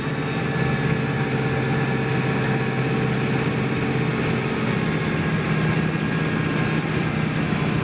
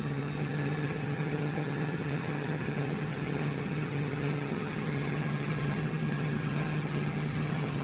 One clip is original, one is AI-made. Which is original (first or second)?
first